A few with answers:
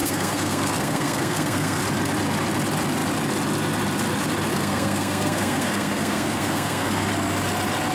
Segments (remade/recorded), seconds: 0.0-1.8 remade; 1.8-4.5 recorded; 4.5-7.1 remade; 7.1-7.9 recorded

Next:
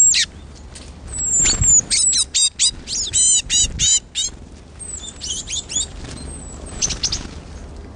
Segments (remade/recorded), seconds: 0.0-8.0 recorded

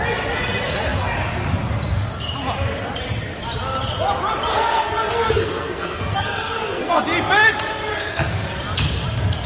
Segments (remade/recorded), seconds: 0.0-4.5 recorded; 4.5-7.0 remade; 7.0-7.9 recorded; 7.9-8.6 remade; 8.6-9.5 recorded

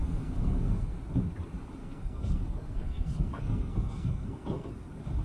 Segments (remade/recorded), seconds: 0.0-1.0 remade; 1.0-1.8 recorded; 1.8-4.7 remade; 4.7-5.2 recorded

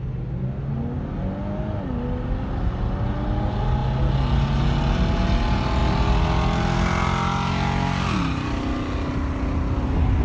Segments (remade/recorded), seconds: 0.0-10.2 recorded

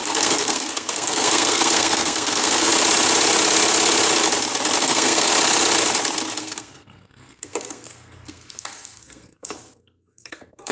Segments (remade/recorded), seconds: 0.0-2.7 remade; 2.7-4.8 recorded; 4.8-5.3 remade; 5.3-6.4 recorded; 6.4-10.7 remade

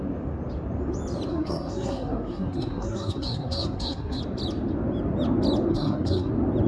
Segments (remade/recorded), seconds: 0.0-1.3 recorded; 1.3-4.2 remade; 4.2-5.7 recorded; 5.7-6.3 remade; 6.3-6.7 recorded

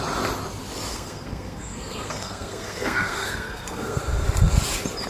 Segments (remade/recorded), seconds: 0.0-0.9 recorded; 0.9-4.0 remade; 4.0-5.1 recorded